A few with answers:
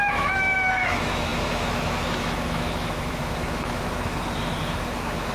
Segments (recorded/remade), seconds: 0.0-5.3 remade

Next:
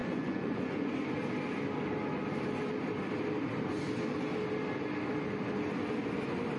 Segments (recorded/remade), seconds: 0.0-0.9 remade; 0.9-6.6 recorded

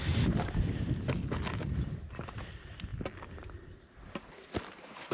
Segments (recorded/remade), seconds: 0.0-5.1 recorded

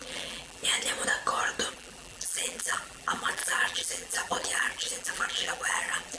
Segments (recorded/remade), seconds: 0.0-0.6 remade; 0.6-1.7 recorded; 1.7-6.2 remade

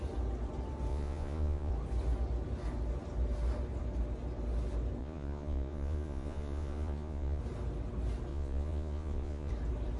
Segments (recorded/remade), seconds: 0.0-0.9 recorded; 0.9-1.7 remade; 1.7-5.0 recorded; 5.0-7.4 remade; 7.4-8.3 recorded; 8.3-9.5 remade; 9.5-10.0 recorded